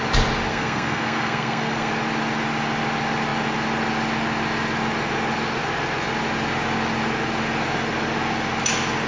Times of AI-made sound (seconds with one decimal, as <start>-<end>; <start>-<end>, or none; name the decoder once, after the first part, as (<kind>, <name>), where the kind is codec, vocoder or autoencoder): 0.5-1.9 (codec, SNAC)